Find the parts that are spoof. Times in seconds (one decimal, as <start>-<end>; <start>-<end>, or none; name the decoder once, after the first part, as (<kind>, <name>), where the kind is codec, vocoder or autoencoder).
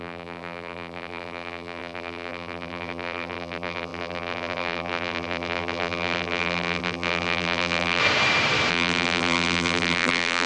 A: 0.0-8.0 (vocoder, BigVGAN v2); 8.7-10.5